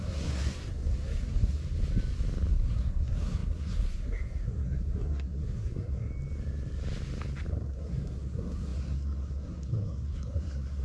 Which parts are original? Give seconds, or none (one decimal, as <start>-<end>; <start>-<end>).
1.6-2.5; 6.1-7.5